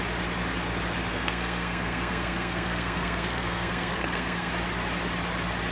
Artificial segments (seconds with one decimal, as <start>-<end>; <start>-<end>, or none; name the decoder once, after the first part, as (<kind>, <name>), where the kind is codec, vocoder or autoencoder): 1.1-4.5 (codec, SNAC)